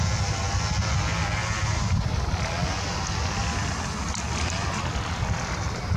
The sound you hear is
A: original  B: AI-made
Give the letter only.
A